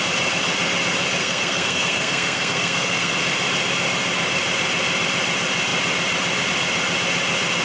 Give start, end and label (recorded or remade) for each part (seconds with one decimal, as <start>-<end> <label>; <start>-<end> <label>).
0.0-1.2 recorded; 1.2-3.1 remade; 3.1-7.6 recorded